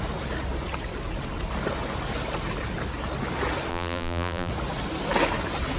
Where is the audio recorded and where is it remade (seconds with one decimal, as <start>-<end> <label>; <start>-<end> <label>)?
0.0-3.7 recorded; 3.7-4.5 remade; 4.5-5.8 recorded